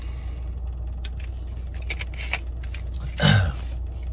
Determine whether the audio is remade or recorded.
recorded